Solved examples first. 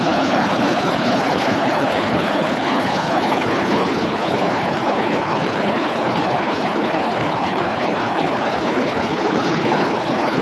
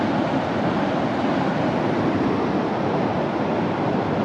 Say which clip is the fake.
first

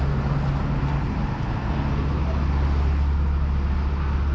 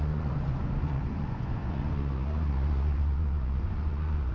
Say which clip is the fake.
second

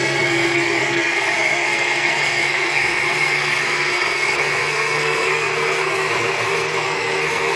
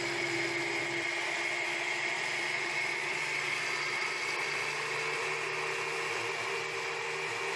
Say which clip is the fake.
first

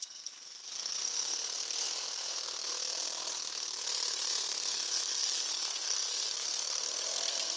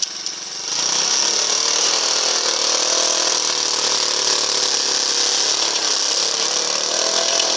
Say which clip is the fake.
first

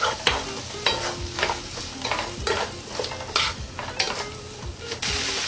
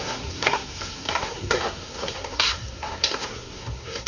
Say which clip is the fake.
second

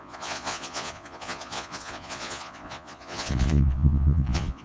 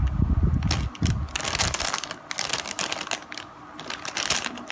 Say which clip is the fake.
first